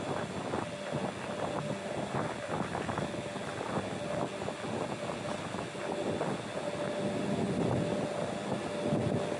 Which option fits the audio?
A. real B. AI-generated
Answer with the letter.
A